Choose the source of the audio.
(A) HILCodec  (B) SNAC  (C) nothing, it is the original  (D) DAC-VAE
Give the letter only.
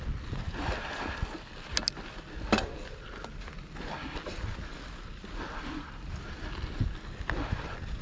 C